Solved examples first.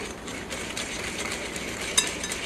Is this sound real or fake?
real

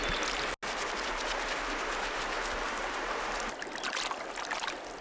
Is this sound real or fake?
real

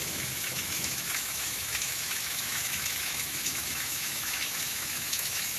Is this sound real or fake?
fake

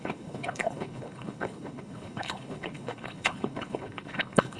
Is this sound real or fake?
fake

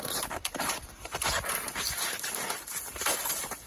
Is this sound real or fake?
fake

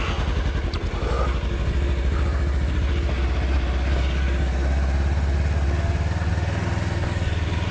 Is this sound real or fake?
real